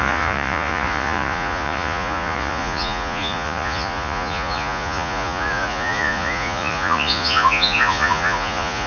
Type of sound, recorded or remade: remade